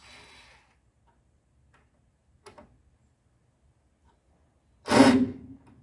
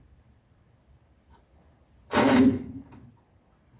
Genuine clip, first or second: first